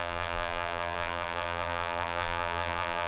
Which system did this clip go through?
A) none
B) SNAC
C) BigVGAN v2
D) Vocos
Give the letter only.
C